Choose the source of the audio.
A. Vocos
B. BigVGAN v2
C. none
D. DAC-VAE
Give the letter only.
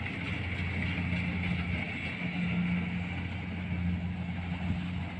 C